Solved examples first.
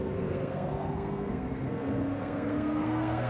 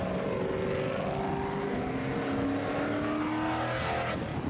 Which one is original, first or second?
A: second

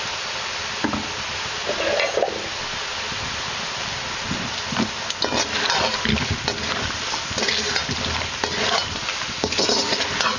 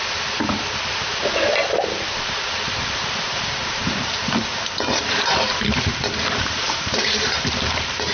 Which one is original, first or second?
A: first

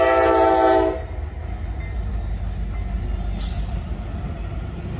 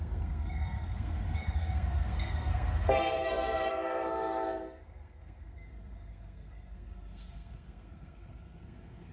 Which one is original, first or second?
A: first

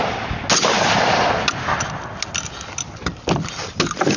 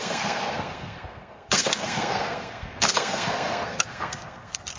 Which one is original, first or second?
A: first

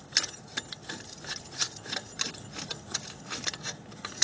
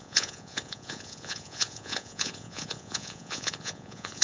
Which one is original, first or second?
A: first